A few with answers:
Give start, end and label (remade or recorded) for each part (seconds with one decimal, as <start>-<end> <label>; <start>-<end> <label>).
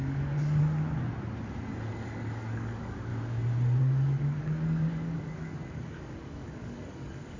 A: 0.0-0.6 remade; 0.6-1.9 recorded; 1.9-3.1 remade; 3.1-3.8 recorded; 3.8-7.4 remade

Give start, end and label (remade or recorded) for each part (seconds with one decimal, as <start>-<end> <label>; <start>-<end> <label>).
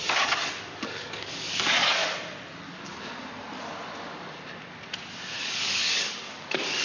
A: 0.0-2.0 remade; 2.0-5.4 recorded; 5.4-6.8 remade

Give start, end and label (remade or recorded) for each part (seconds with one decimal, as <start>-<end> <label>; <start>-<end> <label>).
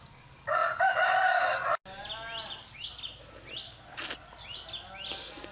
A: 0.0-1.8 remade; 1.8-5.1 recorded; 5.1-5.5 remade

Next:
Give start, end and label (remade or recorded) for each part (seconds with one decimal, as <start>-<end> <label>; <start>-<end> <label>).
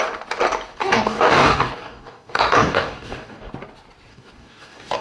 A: 0.0-0.8 recorded; 0.8-3.5 remade; 3.5-4.1 recorded; 4.1-5.0 remade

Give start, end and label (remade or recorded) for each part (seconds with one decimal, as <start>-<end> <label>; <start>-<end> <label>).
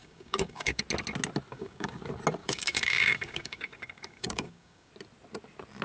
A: 0.0-0.8 remade; 0.8-1.5 recorded; 1.5-2.0 remade; 2.0-2.4 recorded; 2.4-4.9 remade; 4.9-5.8 recorded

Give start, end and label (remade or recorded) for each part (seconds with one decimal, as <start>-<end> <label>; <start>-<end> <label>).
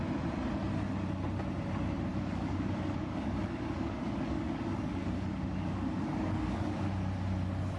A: 0.0-2.1 recorded; 2.1-6.8 remade; 6.8-7.8 recorded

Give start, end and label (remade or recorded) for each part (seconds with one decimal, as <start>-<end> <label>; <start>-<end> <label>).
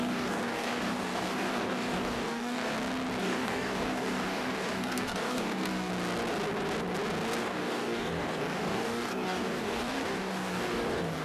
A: 0.0-2.7 remade; 2.7-3.2 recorded; 3.2-5.9 remade; 5.9-7.4 recorded; 7.4-11.2 remade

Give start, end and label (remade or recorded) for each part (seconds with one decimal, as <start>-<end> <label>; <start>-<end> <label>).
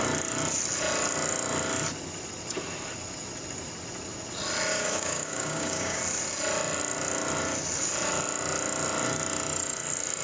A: 0.0-4.7 recorded; 4.7-6.0 remade; 6.0-10.2 recorded